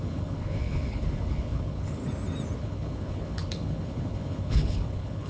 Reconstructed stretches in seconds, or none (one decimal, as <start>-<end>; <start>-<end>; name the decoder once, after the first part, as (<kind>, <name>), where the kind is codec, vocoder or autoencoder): 0.0-2.0 (codec, HILCodec); 2.6-5.3